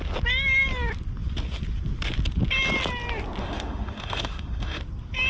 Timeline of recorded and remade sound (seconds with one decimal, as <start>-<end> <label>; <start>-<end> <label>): 0.0-3.4 recorded; 3.4-4.8 remade; 4.8-5.3 recorded